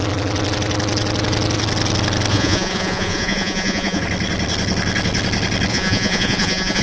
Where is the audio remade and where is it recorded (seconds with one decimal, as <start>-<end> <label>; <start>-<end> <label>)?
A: 0.0-2.3 recorded; 2.3-4.0 remade; 4.0-5.7 recorded; 5.7-6.8 remade